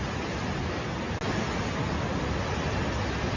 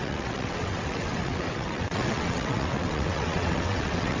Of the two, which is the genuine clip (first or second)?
first